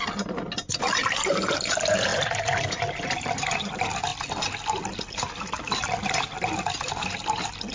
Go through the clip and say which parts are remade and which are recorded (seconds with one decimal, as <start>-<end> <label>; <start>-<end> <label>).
0.0-7.7 recorded